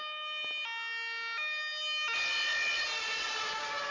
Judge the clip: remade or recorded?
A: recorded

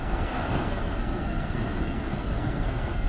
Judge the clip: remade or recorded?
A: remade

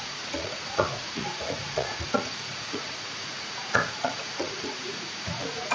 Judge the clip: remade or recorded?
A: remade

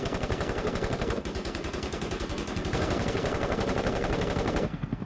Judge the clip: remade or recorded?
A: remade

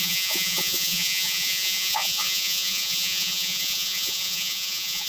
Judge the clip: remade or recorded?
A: remade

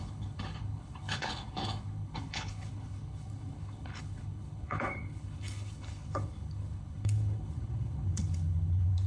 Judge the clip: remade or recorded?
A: remade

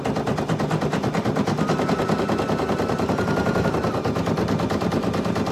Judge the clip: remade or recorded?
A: recorded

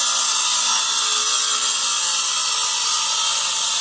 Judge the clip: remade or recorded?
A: recorded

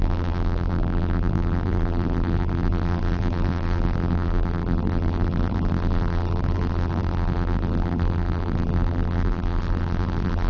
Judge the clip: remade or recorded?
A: remade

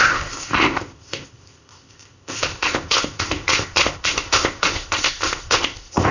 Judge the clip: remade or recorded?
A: remade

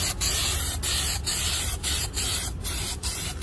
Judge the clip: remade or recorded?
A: recorded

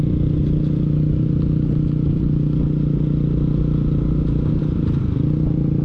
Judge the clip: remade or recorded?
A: recorded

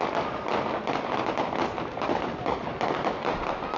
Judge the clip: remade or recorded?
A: recorded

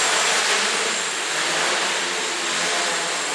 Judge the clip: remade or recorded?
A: recorded